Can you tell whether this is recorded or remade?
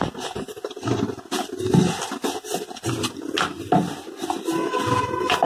recorded